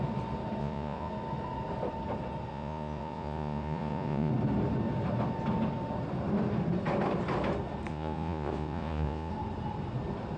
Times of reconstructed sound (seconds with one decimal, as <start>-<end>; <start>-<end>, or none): 0.6-1.1; 2.5-4.3; 7.9-9.3